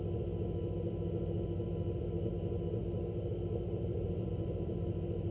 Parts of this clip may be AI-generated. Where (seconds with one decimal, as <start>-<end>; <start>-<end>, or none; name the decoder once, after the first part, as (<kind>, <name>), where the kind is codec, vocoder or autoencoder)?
3.9-4.7 (vocoder, BigVGAN v2)